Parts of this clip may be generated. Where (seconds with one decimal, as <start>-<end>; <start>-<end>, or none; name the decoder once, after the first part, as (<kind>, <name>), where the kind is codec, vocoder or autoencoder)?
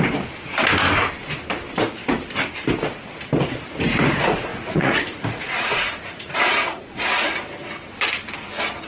4.5-7.4 (vocoder, Vocos)